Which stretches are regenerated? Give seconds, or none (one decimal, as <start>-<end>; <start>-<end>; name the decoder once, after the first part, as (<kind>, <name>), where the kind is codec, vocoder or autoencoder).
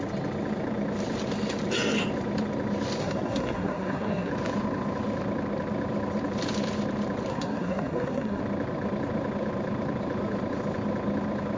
3.0-4.3 (codec, SNAC); 7.3-8.4